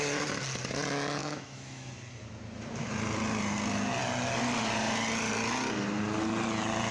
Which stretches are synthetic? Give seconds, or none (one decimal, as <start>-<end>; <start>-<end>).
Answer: 1.2-1.9